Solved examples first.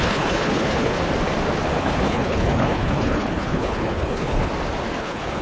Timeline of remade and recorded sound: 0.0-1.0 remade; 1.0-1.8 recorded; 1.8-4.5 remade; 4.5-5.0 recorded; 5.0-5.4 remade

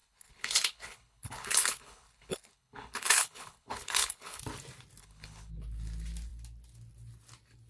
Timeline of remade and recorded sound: 0.0-4.4 remade; 4.4-5.0 recorded; 5.0-5.5 remade; 5.5-7.7 recorded

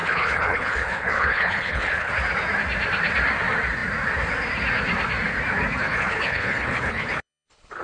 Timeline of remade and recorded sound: 0.0-2.1 remade; 2.1-5.8 recorded; 5.8-7.8 remade